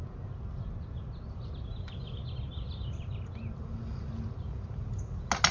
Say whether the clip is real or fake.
real